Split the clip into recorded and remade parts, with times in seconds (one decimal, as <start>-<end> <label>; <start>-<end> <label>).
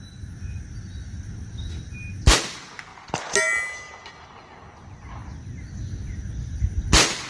0.0-7.3 recorded